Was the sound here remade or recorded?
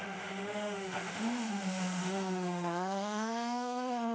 remade